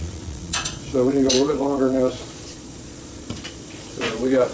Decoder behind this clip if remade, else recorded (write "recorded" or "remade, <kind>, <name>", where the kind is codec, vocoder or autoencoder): remade, vocoder, Vocos